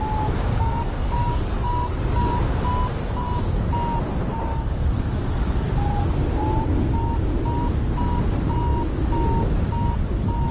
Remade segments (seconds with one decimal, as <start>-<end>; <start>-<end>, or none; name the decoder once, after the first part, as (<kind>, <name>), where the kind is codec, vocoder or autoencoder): 0.5-2.4 (codec, DAC); 4.5-5.7